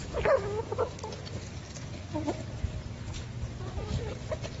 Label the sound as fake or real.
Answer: real